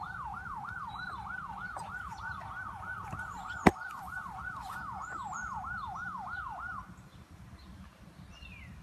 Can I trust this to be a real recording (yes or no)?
no